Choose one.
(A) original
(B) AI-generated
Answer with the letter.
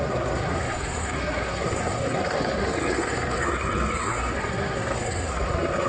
B